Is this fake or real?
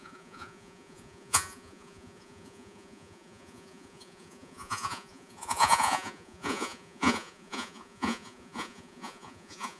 fake